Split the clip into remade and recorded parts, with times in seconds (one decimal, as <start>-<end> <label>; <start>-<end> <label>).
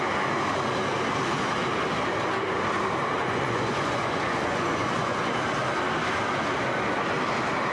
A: 0.0-3.2 recorded; 3.2-5.3 remade; 5.3-7.7 recorded